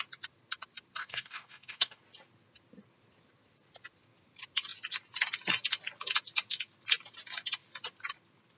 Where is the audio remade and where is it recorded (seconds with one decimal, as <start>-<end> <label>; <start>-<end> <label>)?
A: 0.0-1.0 recorded; 1.0-2.0 remade; 2.0-8.6 recorded